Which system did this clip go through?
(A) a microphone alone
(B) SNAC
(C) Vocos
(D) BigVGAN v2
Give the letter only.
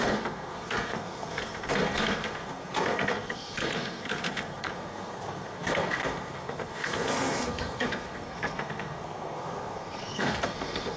B